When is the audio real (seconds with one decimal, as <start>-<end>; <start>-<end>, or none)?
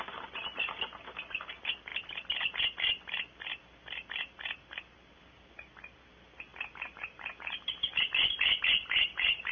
0.0-6.5